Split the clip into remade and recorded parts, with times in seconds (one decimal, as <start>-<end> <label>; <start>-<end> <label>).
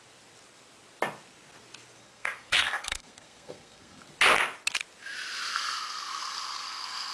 0.0-2.0 recorded; 2.0-4.0 remade; 4.0-5.5 recorded; 5.5-7.1 remade